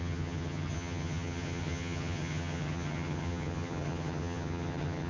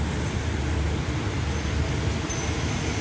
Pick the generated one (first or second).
first